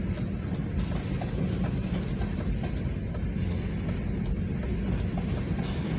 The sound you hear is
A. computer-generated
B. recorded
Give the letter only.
B